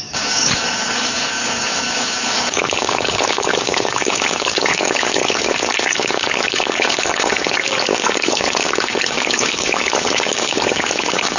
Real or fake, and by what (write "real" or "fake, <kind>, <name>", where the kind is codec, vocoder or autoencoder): fake, codec, DAC